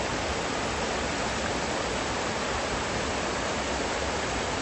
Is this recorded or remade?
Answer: recorded